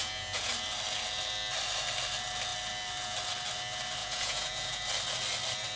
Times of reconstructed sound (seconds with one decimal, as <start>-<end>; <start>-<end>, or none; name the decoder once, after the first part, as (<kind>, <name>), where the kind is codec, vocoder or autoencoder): 0.0-0.5 (vocoder, Vocos); 4.0-4.8